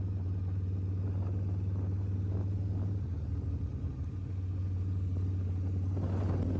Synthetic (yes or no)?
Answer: no